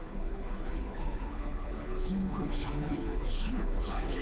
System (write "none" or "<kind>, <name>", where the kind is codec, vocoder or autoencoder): codec, HILCodec